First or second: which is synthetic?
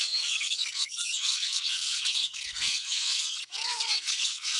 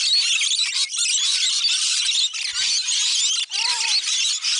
first